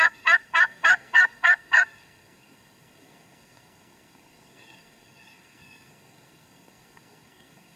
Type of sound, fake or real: fake